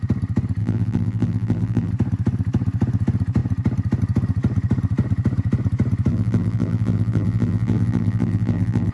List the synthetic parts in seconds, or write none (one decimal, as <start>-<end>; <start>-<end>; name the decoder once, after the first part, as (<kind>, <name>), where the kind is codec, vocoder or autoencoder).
0.6-1.9 (vocoder, BigVGAN v2); 6.1-8.9